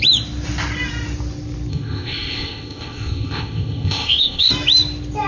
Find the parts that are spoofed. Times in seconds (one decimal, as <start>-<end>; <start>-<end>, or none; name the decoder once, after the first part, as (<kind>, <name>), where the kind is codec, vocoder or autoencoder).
1.7-4.5 (codec, ZipCodec)

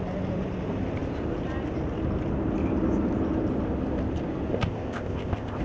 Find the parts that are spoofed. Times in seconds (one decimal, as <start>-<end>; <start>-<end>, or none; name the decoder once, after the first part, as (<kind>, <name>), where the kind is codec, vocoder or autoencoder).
4.5-5.6 (codec, ZipCodec)

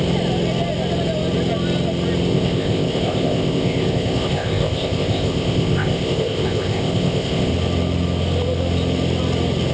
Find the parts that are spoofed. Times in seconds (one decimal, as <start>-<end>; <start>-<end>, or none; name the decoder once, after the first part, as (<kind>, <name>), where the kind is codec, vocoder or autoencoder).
2.3-7.5 (codec, ZipCodec)

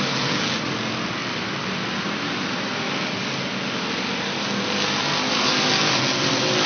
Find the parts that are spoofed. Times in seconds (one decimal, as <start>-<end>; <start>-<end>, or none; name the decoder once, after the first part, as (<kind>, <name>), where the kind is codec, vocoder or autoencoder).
none

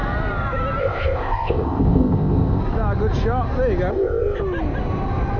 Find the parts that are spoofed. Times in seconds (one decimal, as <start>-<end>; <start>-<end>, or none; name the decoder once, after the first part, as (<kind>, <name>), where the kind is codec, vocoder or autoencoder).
0.8-2.6 (codec, ZipCodec); 3.9-4.4

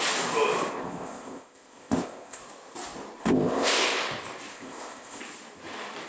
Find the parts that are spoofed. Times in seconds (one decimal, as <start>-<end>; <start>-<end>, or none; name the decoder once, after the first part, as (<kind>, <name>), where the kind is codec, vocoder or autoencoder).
0.7-2.4 (codec, ZipCodec); 3.2-4.0; 4.5-5.2

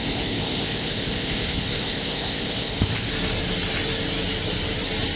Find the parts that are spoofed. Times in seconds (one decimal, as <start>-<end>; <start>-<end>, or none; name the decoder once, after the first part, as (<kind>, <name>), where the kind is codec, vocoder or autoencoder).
0.0-3.1 (codec, ZipCodec)

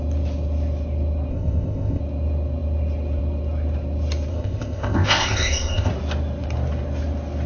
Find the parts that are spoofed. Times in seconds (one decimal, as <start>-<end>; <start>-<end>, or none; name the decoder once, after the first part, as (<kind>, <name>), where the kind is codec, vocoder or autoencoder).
1.3-2.0 (codec, ZipCodec); 4.3-5.9